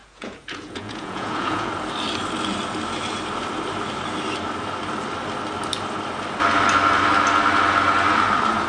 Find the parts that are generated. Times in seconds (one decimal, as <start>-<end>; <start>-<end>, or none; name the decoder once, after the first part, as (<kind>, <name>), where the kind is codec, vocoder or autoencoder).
0.0-1.7 (vocoder, Vocos)